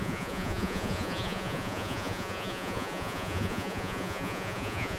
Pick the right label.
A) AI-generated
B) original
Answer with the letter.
A